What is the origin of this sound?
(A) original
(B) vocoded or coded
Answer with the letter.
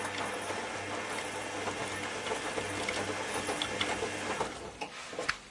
A